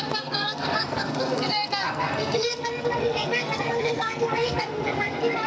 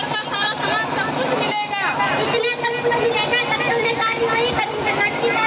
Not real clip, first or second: first